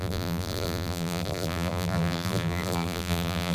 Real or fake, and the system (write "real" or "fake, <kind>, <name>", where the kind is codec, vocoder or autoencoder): fake, vocoder, BigVGAN v2